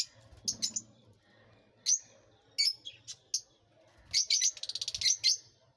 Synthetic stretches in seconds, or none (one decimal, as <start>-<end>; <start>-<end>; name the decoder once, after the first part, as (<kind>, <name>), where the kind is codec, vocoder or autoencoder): none